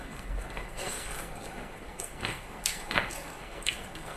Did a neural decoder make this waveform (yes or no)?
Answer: yes